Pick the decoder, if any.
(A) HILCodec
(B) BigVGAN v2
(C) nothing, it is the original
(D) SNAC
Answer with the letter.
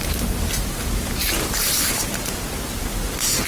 B